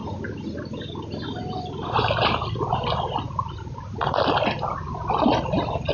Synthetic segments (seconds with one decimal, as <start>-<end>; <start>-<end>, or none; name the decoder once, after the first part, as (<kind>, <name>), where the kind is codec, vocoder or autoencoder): none